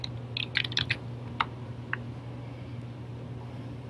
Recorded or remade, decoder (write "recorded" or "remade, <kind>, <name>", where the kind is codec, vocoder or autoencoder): recorded